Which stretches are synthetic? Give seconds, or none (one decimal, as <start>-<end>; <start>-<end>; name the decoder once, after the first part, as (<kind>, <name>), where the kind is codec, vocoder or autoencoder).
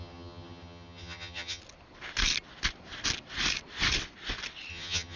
0.0-1.6 (vocoder, HiFi-GAN); 4.7-5.2